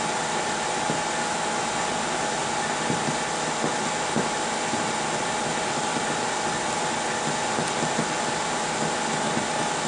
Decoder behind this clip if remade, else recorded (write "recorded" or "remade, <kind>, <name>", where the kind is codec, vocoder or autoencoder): recorded